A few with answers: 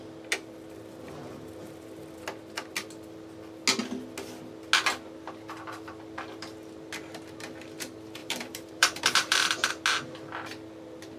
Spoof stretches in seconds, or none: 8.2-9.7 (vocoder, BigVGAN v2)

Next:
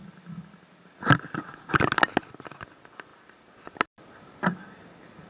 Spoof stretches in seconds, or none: none

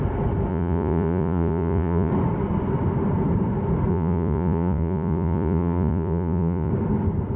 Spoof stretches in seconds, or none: 0.5-2.1 (vocoder, Vocos); 3.9-6.7

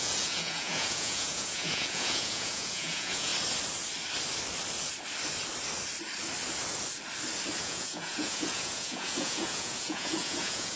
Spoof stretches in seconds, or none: 0.0-3.3 (vocoder, Vocos); 7.6-10.8

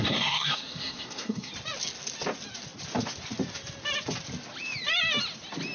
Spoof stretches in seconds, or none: 0.0-1.5 (codec, SNAC)

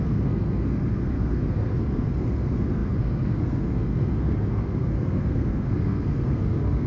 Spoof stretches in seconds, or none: 0.0-6.9 (codec, SNAC)

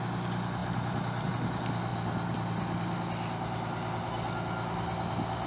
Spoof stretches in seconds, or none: none